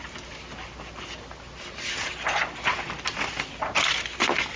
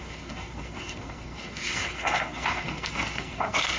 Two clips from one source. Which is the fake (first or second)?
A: second